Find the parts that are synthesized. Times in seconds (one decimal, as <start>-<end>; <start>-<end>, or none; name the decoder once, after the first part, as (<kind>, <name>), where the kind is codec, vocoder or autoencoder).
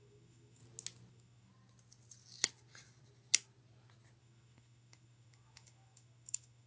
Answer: 0.0-0.6 (autoencoder, DAC-VAE); 1.1-1.5; 4.2-6.7